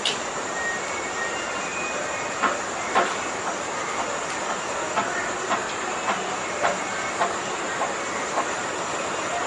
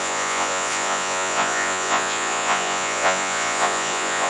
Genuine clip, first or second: first